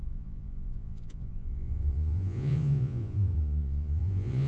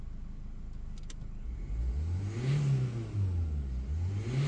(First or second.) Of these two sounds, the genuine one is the second